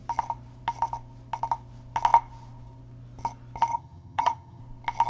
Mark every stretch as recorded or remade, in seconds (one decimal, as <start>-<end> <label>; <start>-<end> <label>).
0.0-3.7 recorded; 3.7-4.6 remade; 4.6-5.1 recorded